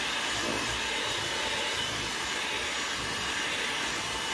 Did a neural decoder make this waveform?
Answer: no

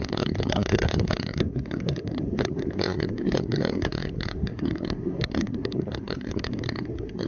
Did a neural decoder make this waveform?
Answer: yes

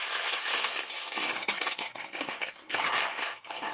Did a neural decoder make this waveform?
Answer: yes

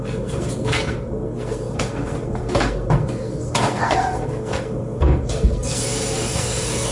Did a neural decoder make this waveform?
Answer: yes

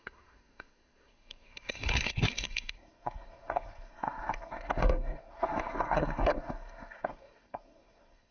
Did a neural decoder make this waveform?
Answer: yes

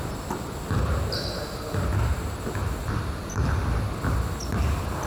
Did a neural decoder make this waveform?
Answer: no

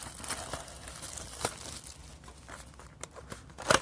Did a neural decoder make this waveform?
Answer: no